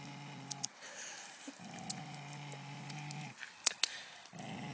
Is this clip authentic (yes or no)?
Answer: yes